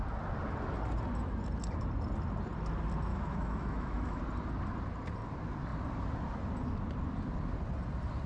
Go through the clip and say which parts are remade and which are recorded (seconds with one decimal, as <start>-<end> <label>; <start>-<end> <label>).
0.0-3.1 recorded; 3.1-4.2 remade; 4.2-8.3 recorded